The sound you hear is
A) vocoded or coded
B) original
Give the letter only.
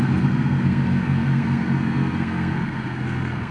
A